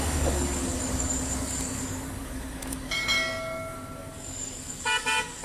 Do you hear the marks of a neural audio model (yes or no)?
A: yes